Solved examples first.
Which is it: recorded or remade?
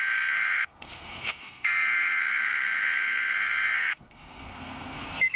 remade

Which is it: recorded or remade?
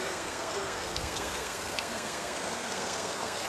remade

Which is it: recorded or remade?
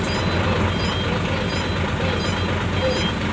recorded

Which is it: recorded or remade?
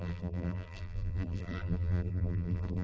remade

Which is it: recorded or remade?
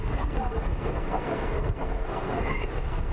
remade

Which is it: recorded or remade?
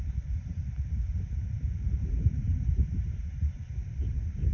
remade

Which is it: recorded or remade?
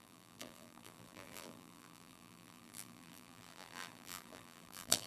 remade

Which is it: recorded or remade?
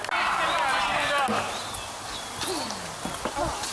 recorded